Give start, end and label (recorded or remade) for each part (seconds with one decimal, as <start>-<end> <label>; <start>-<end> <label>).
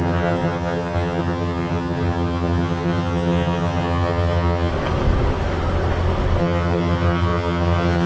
0.0-4.7 remade; 4.7-6.4 recorded; 6.4-8.1 remade